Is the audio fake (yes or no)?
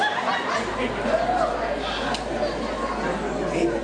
no